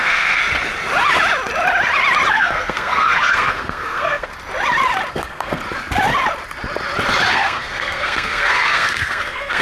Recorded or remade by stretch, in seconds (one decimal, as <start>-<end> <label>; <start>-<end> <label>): 0.0-0.4 remade; 0.4-2.3 recorded; 2.3-4.3 remade; 4.3-5.1 recorded; 5.1-5.6 remade; 5.6-7.3 recorded; 7.3-9.6 remade